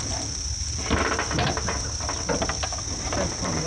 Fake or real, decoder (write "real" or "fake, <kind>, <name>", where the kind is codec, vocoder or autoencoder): real